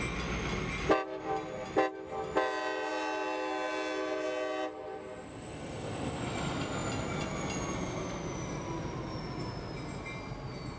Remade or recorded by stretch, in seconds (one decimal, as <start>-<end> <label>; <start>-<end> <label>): 0.0-10.8 recorded